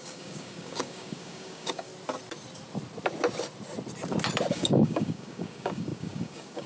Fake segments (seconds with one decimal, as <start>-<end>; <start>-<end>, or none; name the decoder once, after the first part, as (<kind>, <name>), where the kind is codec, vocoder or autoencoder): 0.0-1.9 (codec, DAC); 4.5-6.7